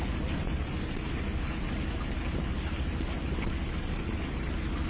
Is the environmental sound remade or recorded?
remade